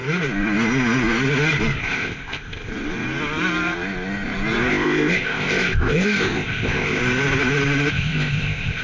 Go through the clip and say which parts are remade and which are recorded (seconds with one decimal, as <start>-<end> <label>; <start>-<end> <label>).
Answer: 0.0-1.8 recorded; 1.8-2.7 remade; 2.7-4.7 recorded; 4.7-7.0 remade; 7.0-7.9 recorded; 7.9-8.8 remade